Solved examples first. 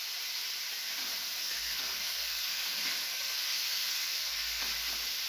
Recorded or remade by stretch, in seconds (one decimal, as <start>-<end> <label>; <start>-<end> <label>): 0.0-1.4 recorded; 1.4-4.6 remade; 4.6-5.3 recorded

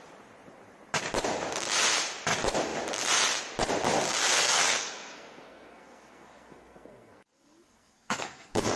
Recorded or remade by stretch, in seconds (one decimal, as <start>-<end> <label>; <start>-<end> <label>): 0.0-4.3 recorded; 4.3-8.8 remade

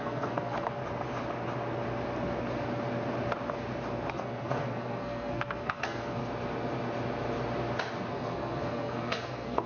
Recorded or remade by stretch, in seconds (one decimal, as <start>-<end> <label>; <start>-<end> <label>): 0.0-0.8 remade; 0.8-4.1 recorded; 4.1-6.2 remade; 6.2-8.1 recorded; 8.1-9.7 remade